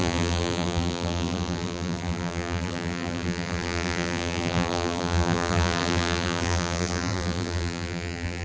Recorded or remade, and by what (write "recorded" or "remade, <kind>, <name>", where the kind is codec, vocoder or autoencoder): remade, vocoder, BigVGAN v2